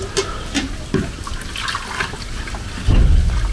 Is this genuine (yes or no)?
yes